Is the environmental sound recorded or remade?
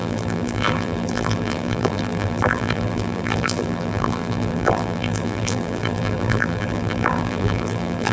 remade